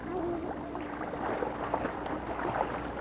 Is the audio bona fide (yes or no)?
no